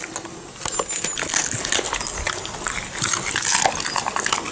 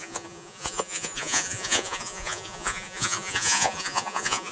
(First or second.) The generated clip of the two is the second